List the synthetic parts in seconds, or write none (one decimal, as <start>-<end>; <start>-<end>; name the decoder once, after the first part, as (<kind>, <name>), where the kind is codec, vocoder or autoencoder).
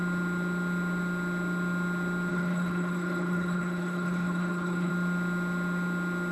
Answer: 2.3-4.9 (codec, HILCodec)